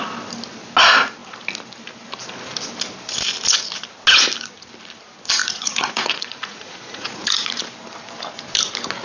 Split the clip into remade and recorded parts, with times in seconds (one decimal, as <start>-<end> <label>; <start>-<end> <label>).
0.0-5.4 recorded; 5.4-7.6 remade; 7.6-9.0 recorded